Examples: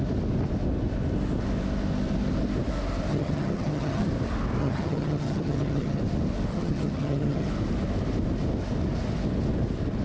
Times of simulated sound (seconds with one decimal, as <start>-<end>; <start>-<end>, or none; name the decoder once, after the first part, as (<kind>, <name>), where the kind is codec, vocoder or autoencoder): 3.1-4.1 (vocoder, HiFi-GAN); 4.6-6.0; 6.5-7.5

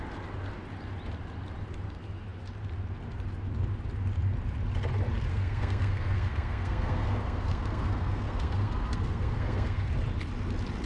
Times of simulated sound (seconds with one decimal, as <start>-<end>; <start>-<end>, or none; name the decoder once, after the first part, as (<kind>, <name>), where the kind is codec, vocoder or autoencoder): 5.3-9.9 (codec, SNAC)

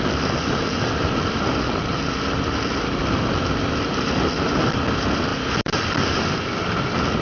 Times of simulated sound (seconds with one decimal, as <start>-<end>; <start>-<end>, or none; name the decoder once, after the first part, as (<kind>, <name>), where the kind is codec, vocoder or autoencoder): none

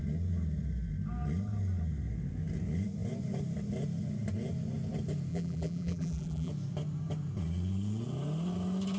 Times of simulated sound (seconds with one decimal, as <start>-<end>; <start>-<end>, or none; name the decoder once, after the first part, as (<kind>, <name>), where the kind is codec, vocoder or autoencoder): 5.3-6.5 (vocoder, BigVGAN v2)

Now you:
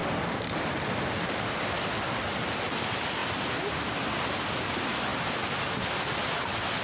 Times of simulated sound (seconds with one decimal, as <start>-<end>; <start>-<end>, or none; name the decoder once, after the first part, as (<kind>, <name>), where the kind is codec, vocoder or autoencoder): none

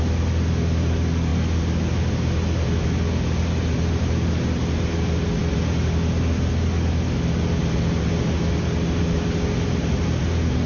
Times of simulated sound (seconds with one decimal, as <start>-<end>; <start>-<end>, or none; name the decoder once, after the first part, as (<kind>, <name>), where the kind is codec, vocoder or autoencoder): none